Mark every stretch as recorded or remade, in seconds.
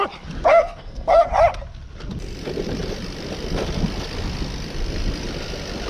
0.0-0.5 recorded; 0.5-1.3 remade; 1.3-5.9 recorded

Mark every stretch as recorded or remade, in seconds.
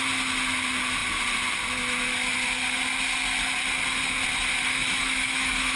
0.0-4.7 recorded; 4.7-5.8 remade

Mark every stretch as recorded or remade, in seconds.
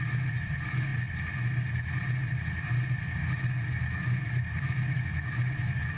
0.0-3.2 recorded; 3.2-6.0 remade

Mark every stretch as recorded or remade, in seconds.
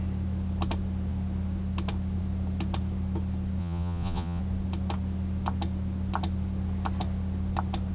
0.0-3.6 recorded; 3.6-4.4 remade; 4.4-7.9 recorded